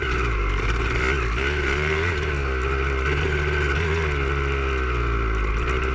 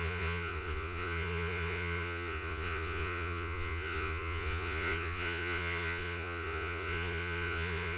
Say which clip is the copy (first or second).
second